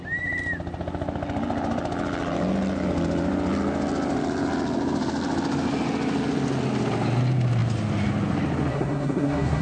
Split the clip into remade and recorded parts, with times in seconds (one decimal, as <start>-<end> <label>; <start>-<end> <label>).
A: 0.0-8.7 recorded; 8.7-9.6 remade